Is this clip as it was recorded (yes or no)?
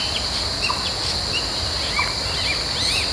yes